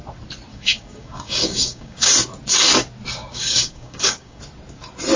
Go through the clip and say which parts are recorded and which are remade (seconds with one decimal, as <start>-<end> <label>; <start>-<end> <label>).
0.0-0.5 recorded; 0.5-2.1 remade; 2.1-3.2 recorded; 3.2-4.4 remade; 4.4-5.2 recorded